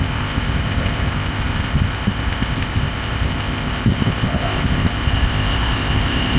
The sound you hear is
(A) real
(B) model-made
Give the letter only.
B